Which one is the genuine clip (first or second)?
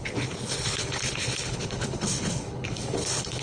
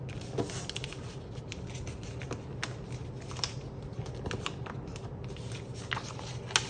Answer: second